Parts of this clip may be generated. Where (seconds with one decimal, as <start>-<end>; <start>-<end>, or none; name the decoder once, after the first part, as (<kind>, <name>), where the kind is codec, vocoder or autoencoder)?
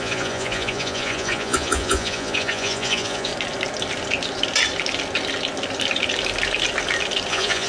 0.0-3.3 (vocoder, Vocos); 7.3-7.7